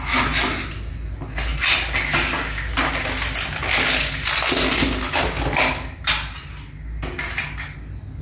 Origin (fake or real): real